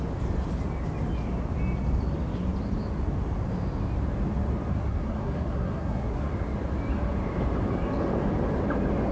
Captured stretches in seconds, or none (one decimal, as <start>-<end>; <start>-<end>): 0.0-4.7; 6.3-9.1